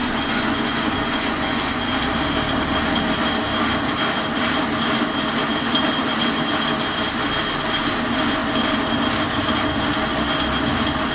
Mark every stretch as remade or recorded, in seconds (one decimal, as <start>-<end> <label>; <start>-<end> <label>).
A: 0.0-1.8 remade; 1.8-11.1 recorded